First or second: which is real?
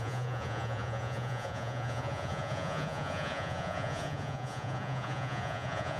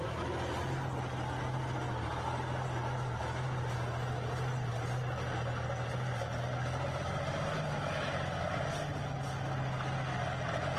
second